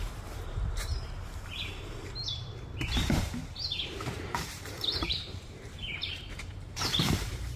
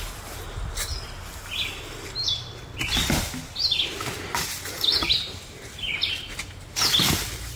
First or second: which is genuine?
second